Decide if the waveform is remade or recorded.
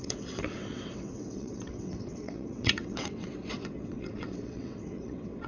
remade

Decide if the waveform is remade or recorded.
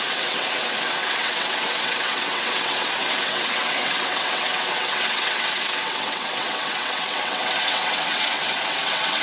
remade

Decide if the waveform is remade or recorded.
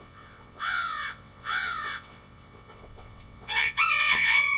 remade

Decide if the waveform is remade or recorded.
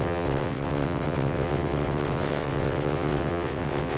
remade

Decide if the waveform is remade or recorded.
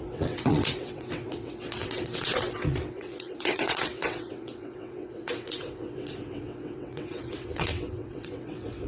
remade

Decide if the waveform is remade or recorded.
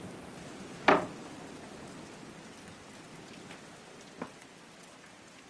recorded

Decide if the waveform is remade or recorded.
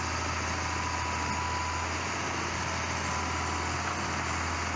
recorded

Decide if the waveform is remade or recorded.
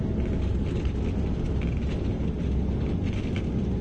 recorded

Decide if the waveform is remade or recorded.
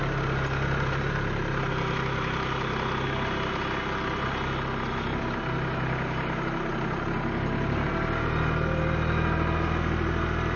recorded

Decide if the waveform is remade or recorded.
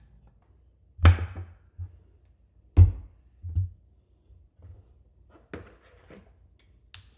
recorded